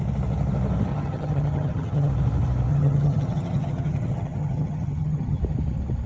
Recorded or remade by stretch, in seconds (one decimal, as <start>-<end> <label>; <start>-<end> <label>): 0.0-0.9 recorded; 0.9-2.1 remade; 2.1-2.7 recorded; 2.7-5.4 remade; 5.4-6.1 recorded